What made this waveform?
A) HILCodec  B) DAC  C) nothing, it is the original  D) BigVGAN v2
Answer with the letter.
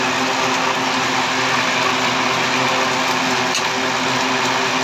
C